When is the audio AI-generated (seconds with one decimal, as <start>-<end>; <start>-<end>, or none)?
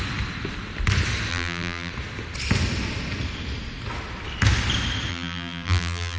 1.3-1.9; 5.1-6.2